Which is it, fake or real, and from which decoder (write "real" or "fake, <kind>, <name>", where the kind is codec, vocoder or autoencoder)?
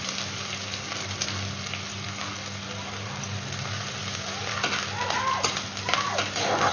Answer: real